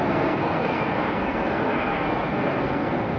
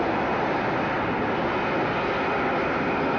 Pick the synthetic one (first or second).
first